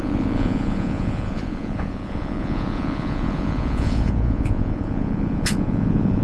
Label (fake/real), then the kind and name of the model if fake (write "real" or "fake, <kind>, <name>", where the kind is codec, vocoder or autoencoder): fake, vocoder, Vocos